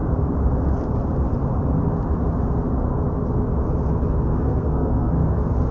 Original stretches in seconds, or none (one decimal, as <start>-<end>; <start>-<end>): 0.0-4.3; 5.1-5.7